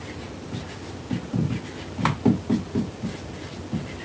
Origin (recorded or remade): recorded